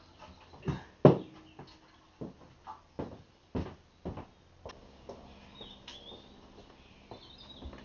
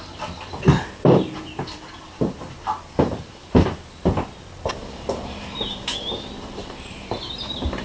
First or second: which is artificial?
second